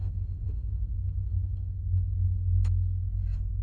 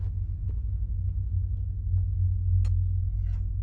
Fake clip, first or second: first